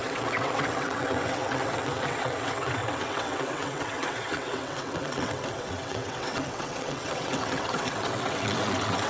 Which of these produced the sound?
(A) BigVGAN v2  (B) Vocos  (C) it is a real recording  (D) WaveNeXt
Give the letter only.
D